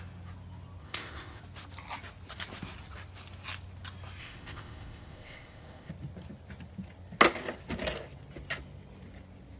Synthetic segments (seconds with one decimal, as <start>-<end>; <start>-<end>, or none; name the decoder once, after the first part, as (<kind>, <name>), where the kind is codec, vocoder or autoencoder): 0.8-1.4 (codec, ZipCodec); 4.2-5.9